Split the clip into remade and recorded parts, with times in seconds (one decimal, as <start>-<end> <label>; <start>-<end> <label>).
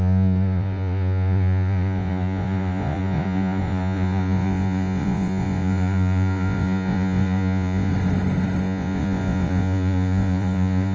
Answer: 0.0-7.9 remade; 7.9-8.6 recorded; 8.6-10.9 remade